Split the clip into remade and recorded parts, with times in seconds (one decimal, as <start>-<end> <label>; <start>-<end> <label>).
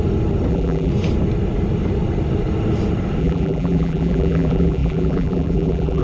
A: 0.0-0.5 recorded; 0.5-0.9 remade; 0.9-3.2 recorded; 3.2-6.0 remade